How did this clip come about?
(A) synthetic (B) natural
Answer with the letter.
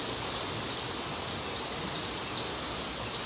B